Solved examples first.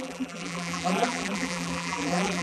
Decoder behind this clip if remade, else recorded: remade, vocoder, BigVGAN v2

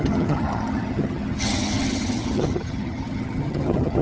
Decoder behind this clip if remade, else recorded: remade, vocoder, HiFi-GAN